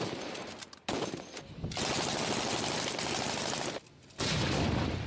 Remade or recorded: recorded